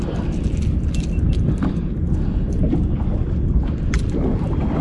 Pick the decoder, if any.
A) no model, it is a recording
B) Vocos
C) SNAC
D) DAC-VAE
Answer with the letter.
A